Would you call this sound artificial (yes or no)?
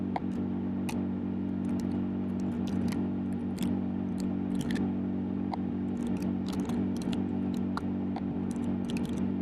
no